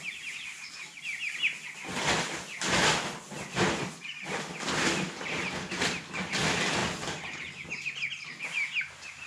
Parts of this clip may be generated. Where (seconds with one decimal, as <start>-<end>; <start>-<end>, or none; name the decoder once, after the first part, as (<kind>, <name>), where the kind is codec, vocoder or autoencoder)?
none

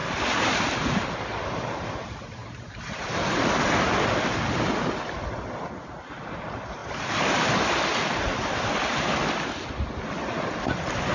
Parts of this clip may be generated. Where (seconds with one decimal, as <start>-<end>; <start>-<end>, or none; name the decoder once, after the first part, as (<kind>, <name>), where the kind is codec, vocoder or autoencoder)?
2.4-3.4 (vocoder, BigVGAN v2); 6.8-7.5; 8.3-9.1

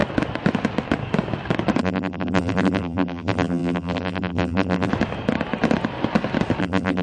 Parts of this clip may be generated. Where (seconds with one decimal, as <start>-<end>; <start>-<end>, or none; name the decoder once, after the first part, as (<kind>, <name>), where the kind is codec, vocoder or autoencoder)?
1.8-4.9 (vocoder, BigVGAN v2); 6.6-7.0

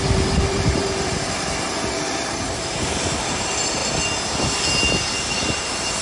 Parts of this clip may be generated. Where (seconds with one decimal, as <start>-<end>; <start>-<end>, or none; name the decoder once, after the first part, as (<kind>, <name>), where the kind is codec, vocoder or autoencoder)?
0.0-3.8 (vocoder, BigVGAN v2); 5.3-6.0

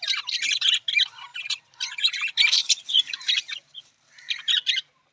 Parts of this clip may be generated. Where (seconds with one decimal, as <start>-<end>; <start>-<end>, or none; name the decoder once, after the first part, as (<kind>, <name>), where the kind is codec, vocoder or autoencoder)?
1.3-2.1 (vocoder, BigVGAN v2); 2.6-4.5

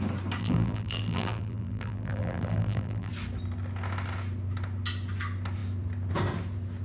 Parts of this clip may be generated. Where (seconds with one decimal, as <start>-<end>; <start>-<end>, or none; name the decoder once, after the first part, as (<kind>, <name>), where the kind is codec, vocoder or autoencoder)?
0.4-3.1 (vocoder, BigVGAN v2)